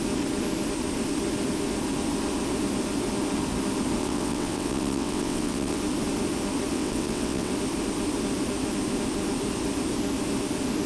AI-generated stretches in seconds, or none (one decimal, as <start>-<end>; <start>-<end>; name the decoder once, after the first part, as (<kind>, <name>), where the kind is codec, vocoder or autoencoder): 4.0-5.8 (vocoder, WaveNeXt); 6.7-7.5